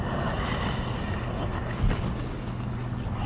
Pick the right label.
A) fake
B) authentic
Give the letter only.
B